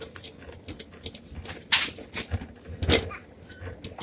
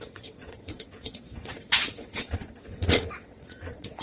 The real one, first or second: first